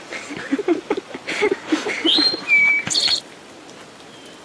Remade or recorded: remade